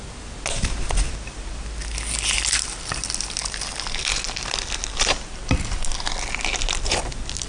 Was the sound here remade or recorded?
recorded